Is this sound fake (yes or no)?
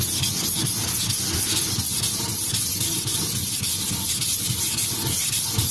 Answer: no